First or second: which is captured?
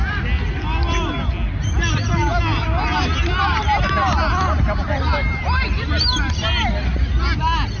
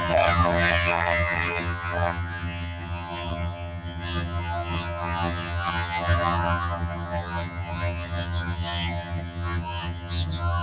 first